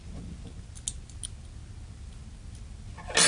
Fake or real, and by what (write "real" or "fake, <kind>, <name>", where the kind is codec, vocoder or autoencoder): real